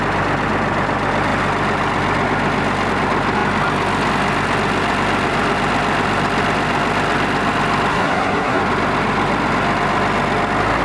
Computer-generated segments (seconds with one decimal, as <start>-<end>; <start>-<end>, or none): 7.9-8.6